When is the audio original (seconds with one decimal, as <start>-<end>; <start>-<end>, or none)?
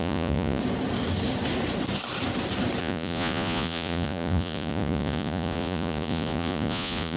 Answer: 0.6-2.8